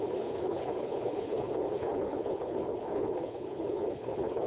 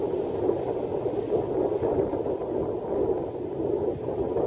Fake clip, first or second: first